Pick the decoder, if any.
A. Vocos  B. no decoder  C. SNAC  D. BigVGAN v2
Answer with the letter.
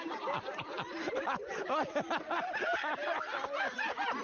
D